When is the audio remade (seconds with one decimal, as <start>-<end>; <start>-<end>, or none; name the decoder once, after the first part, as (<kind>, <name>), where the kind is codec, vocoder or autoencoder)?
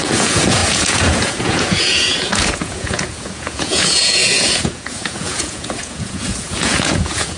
0.0-7.4 (vocoder, Vocos)